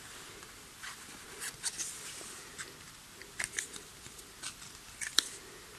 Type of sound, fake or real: real